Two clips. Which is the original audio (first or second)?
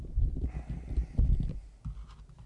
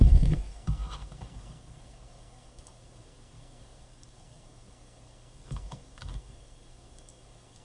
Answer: first